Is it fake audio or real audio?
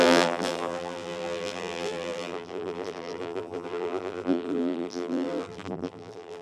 fake